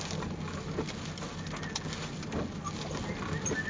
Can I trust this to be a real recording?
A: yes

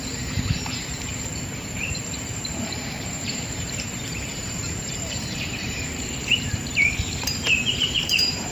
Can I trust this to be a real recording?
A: no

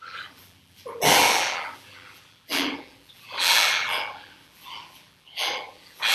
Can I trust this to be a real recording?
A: no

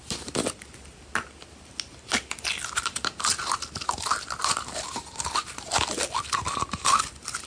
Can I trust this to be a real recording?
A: yes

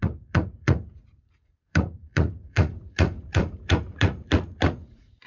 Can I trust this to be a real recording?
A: no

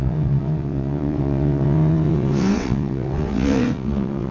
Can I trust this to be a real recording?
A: no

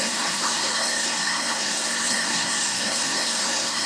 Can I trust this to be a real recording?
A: no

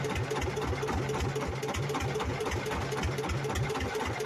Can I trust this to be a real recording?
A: yes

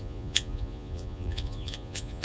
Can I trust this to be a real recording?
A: no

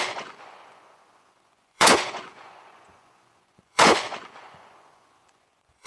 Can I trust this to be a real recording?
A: no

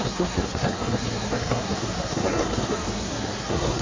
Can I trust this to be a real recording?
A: no